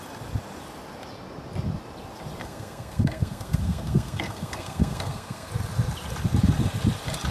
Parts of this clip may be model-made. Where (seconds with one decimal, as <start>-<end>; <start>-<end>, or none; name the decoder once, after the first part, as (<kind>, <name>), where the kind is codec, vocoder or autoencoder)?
2.4-5.5 (codec, SNAC)